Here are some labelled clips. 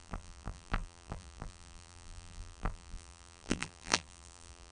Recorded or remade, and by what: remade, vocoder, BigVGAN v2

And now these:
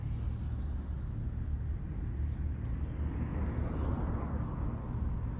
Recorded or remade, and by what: recorded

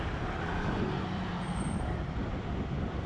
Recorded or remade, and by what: remade, vocoder, BigVGAN v2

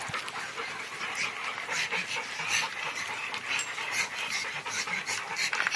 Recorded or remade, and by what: recorded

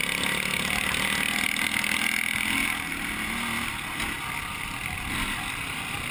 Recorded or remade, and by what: recorded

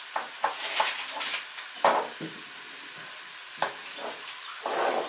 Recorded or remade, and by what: recorded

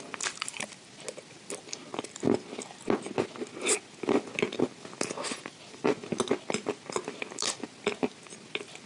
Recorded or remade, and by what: recorded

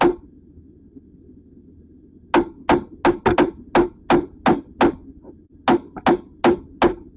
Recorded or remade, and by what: recorded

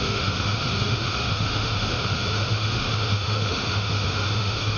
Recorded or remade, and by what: remade, autoencoder, DAC-VAE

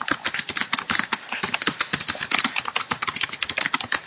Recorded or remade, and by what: recorded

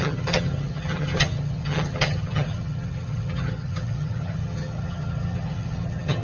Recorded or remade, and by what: remade, vocoder, HiFi-GAN